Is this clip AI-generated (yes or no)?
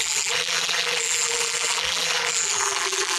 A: yes